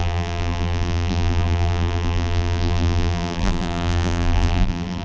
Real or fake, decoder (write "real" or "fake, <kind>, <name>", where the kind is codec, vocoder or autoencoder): fake, vocoder, BigVGAN v2